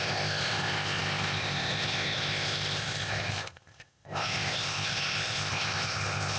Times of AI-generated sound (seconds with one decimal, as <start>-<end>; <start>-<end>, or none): 0.0-6.4